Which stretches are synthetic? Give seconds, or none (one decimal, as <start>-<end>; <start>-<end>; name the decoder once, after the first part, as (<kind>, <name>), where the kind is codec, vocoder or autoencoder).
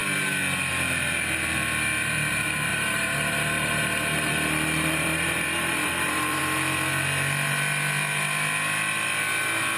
2.7-6.4 (vocoder, BigVGAN v2)